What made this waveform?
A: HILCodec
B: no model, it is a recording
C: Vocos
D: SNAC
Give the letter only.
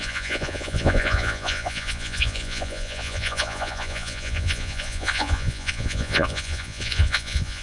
C